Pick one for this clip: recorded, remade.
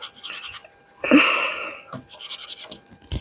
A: recorded